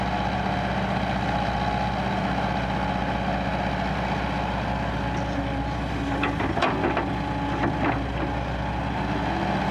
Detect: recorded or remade recorded